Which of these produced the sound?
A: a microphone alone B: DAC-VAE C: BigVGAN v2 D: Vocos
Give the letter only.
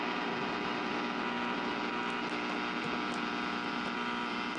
A